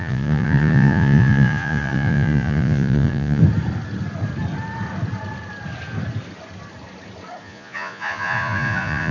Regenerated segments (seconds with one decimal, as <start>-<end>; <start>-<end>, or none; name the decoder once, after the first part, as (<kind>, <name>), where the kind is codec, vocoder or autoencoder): 0.0-3.4 (vocoder, Vocos); 7.4-9.1